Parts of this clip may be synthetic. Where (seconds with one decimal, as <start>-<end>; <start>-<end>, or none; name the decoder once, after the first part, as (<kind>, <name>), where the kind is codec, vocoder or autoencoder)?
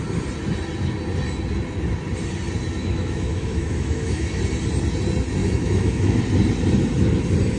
2.8-4.4 (autoencoder, DAC-VAE); 5.4-6.2